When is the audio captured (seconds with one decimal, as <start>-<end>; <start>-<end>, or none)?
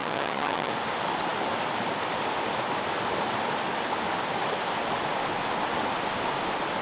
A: 0.7-6.8